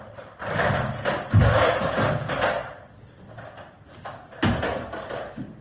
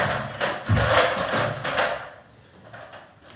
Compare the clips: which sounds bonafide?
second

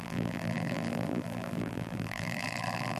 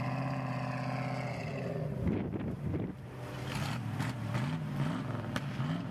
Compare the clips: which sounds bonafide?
second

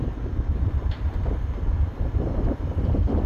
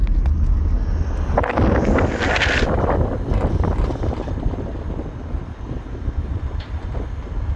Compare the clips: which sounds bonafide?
second